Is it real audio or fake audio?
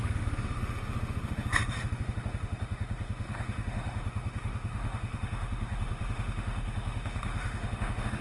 fake